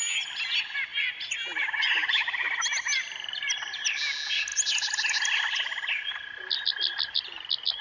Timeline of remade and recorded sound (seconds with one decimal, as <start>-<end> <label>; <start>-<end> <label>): 0.0-7.8 recorded